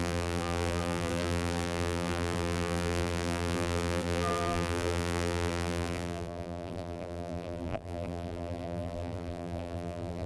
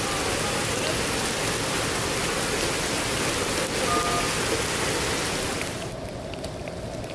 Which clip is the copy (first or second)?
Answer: first